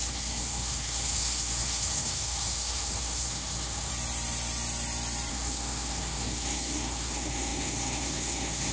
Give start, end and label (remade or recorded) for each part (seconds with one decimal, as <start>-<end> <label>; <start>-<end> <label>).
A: 0.0-3.9 remade; 3.9-5.3 recorded; 5.3-8.7 remade